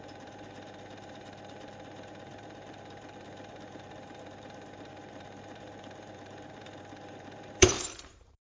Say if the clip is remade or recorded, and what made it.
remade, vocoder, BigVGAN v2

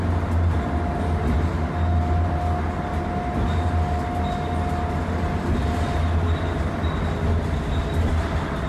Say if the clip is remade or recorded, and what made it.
recorded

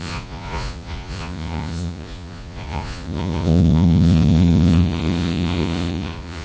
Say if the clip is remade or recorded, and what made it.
remade, vocoder, Vocos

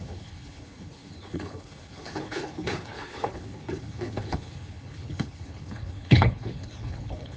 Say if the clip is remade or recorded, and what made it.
remade, codec, HILCodec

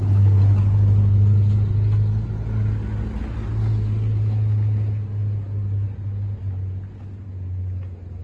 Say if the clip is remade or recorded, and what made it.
recorded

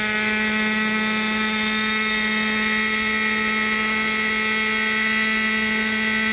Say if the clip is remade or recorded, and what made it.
recorded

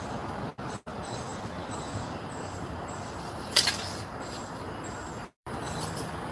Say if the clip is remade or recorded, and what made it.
remade, vocoder, BigVGAN v2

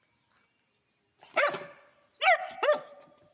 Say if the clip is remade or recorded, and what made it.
recorded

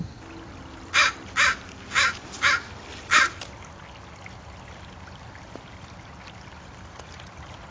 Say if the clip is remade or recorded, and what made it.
recorded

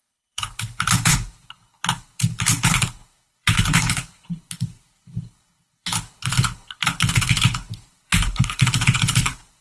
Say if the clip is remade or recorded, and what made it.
remade, codec, HILCodec